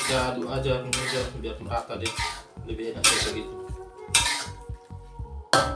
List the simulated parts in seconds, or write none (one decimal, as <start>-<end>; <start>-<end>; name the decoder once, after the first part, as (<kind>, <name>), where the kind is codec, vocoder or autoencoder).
2.5-3.3 (vocoder, BigVGAN v2); 3.7-4.6